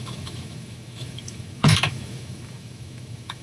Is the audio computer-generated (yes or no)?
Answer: yes